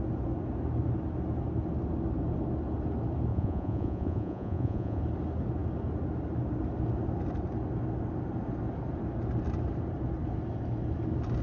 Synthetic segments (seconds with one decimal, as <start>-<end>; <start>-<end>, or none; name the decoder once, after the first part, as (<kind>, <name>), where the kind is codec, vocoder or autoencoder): 3.3-5.0 (vocoder, Vocos)